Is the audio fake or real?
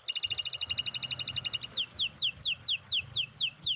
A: real